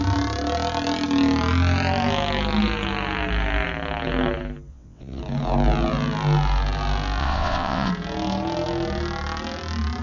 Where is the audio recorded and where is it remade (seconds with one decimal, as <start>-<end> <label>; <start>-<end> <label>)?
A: 0.0-4.7 recorded; 4.7-5.2 remade; 5.2-7.2 recorded; 7.2-7.9 remade; 7.9-10.0 recorded